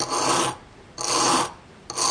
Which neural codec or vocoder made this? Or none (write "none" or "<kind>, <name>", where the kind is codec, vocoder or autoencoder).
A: none